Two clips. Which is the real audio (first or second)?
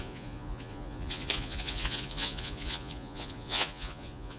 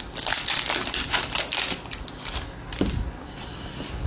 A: second